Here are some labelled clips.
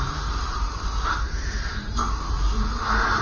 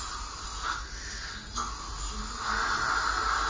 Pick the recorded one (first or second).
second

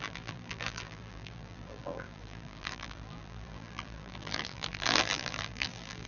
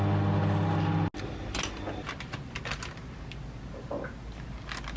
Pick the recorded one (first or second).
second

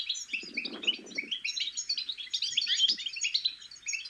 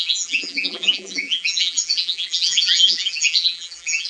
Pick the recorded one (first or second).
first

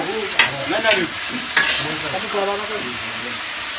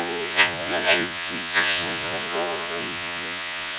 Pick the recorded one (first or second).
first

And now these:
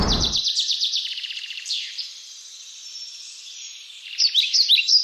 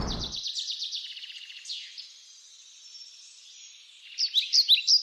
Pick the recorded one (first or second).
second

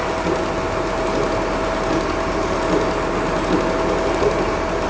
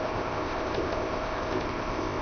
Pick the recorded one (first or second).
first